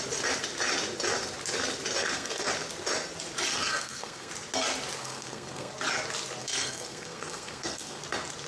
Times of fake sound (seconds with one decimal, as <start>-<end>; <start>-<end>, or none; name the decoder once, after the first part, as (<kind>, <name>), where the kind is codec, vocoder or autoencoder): 2.0-2.5 (codec, SNAC); 3.5-4.3; 5.0-5.7; 6.4-8.0